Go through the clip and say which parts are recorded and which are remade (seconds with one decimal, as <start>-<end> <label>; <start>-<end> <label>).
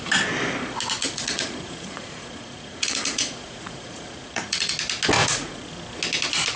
0.0-1.0 recorded; 1.0-4.7 remade; 4.7-5.2 recorded; 5.2-5.7 remade; 5.7-6.6 recorded